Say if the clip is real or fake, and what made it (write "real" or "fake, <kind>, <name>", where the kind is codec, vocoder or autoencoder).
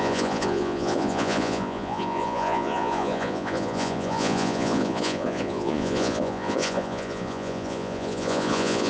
fake, vocoder, Vocos